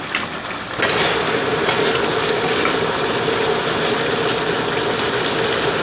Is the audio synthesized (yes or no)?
no